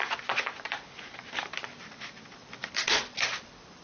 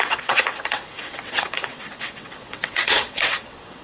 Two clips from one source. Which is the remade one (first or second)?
second